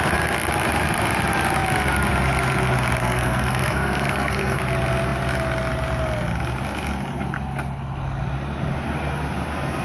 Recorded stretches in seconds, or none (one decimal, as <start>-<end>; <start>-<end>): 0.0-3.0; 4.6-9.8